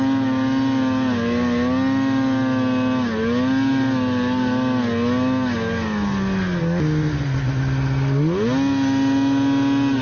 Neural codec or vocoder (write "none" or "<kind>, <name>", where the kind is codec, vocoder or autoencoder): none